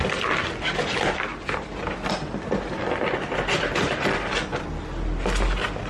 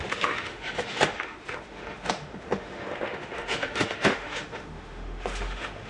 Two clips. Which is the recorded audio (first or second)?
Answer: first